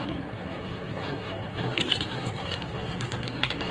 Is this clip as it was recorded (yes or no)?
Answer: no